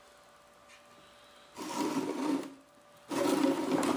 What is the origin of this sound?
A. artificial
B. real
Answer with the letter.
B